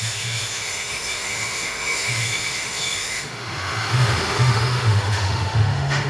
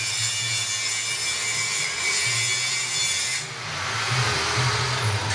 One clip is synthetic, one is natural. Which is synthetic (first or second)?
first